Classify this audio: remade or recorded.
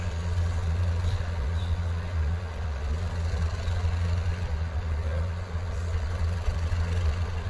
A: remade